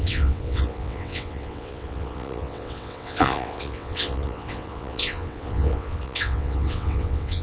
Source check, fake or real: fake